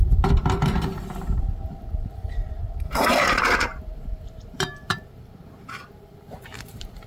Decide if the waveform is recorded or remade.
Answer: remade